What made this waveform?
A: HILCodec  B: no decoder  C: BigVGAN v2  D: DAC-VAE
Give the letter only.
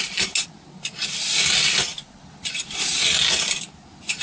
B